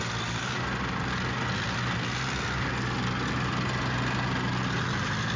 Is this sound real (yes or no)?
yes